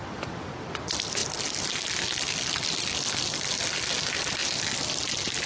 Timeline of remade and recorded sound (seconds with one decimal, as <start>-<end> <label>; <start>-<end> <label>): 0.0-5.5 recorded